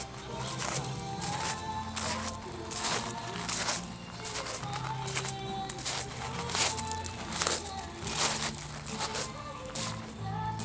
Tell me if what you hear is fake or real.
real